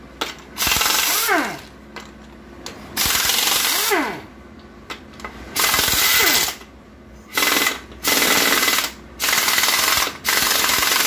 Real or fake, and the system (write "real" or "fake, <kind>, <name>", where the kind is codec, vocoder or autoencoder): real